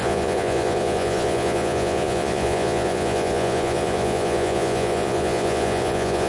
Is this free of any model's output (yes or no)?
no